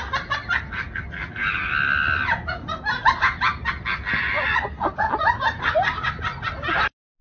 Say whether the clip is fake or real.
real